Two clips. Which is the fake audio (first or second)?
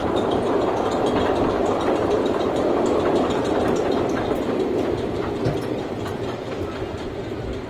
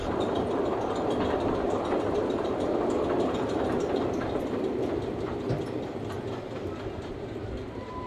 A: first